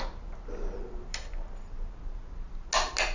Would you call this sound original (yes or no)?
yes